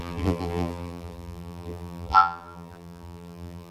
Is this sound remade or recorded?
remade